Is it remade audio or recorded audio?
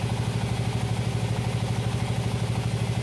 recorded